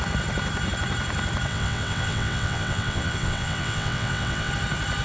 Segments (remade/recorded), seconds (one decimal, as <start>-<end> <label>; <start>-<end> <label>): 0.0-1.5 recorded; 1.5-4.5 remade; 4.5-5.0 recorded